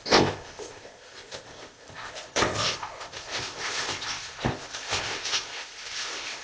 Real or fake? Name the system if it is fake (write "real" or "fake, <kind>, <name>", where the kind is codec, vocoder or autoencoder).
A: fake, codec, ZipCodec